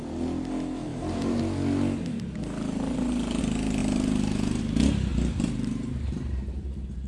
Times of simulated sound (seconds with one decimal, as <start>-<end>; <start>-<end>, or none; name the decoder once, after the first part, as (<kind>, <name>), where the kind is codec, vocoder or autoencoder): 0.9-1.4 (vocoder, BigVGAN v2); 3.8-4.6; 5.1-7.1